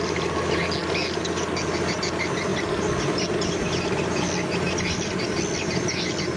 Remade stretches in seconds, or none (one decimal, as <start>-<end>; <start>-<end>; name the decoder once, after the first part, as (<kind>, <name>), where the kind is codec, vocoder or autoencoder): none